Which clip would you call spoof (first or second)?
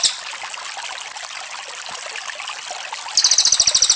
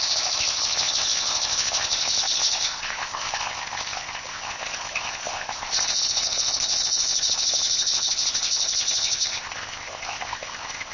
second